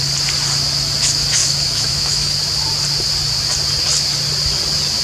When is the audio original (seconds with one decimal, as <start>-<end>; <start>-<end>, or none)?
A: 0.0-1.4; 2.4-5.0